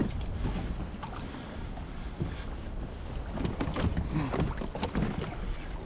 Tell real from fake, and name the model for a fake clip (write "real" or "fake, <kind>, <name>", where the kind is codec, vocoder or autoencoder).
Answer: real